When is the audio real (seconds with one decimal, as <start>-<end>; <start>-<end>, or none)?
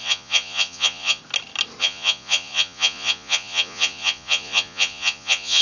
1.2-1.8